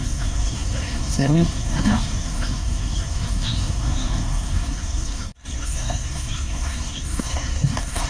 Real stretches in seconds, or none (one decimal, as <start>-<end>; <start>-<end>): none